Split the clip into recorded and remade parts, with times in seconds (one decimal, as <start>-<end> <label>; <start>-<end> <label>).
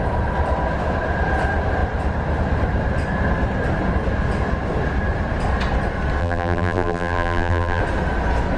0.0-6.2 recorded; 6.2-7.8 remade; 7.8-8.6 recorded